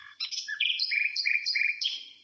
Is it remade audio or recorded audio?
remade